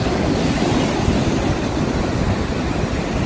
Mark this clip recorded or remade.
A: recorded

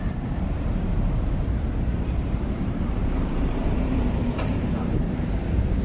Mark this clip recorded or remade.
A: remade